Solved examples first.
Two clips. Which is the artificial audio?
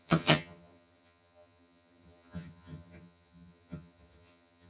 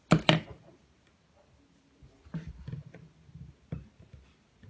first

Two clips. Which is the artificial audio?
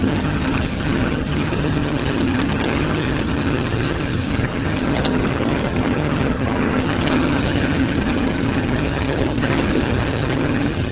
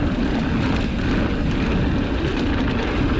first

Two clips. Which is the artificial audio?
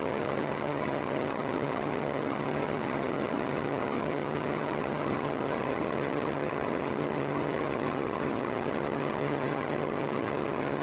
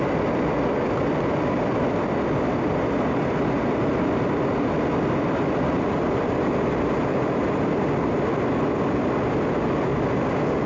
first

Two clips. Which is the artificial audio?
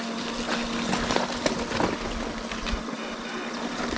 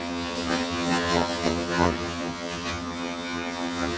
second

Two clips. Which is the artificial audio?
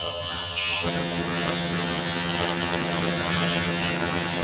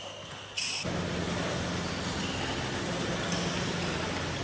first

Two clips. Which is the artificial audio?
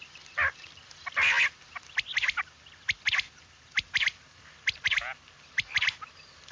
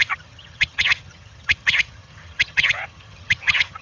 second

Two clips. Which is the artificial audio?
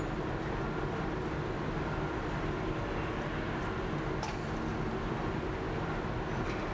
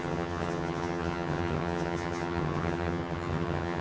second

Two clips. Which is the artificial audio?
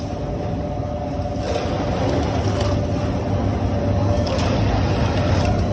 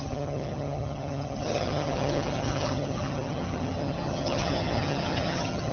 second